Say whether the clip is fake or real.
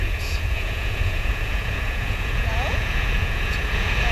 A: fake